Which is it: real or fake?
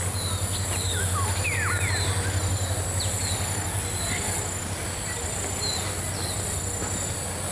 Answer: real